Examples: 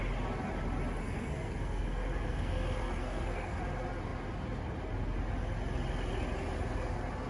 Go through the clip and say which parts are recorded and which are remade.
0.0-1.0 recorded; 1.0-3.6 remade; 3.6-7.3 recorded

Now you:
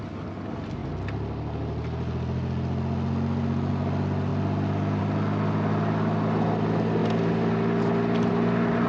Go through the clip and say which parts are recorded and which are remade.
0.0-8.9 recorded

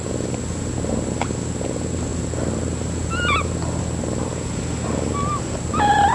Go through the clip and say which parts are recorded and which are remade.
0.0-6.1 recorded